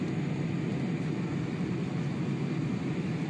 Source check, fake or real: real